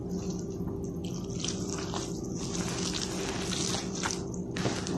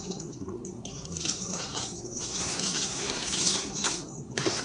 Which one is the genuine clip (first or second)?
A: first